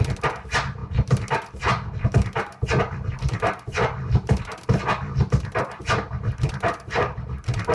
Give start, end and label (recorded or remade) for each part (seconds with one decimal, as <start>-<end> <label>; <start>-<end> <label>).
0.0-7.7 recorded